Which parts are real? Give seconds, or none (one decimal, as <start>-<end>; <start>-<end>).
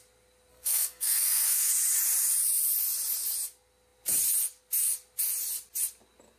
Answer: 0.0-0.5; 1.7-6.4